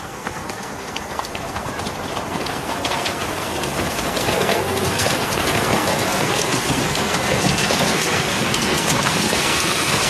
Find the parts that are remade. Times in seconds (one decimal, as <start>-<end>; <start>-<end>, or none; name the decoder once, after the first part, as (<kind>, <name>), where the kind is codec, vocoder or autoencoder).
0.0-1.7 (codec, SNAC); 2.3-10.1